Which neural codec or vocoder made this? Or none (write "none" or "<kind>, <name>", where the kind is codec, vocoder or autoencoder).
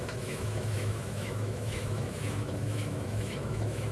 autoencoder, DAC-VAE